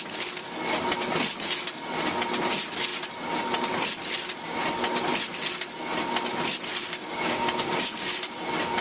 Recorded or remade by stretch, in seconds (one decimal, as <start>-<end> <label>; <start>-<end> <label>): 0.0-6.8 recorded; 6.8-8.2 remade; 8.2-8.8 recorded